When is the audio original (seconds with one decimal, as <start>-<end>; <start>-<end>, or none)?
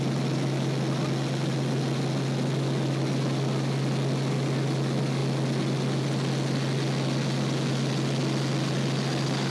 0.0-9.5